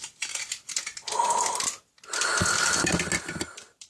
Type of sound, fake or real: real